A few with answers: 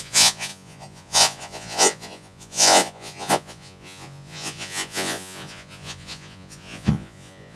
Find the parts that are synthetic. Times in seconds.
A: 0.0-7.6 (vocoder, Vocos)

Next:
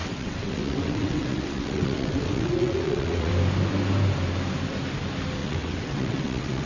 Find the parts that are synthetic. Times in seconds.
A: 0.0-3.3 (vocoder, WaveNeXt); 5.4-6.7

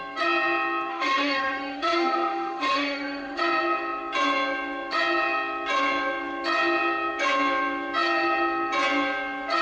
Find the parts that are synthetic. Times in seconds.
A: 0.9-3.4 (autoencoder, DAC-VAE)